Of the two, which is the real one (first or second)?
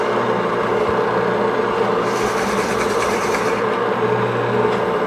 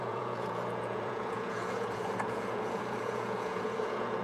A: first